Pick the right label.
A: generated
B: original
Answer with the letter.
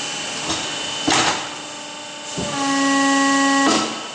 B